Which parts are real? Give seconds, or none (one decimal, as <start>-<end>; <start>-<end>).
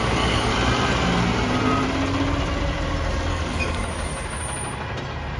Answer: 0.5-3.3; 4.1-5.4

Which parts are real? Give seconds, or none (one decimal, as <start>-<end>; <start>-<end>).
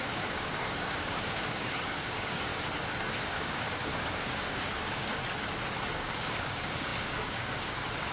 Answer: 2.5-3.2; 5.1-5.9